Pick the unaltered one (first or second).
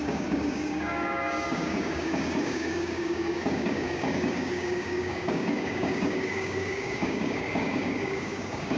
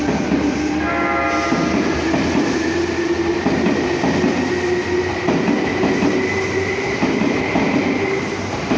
second